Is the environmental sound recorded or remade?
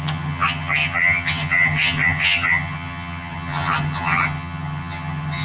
remade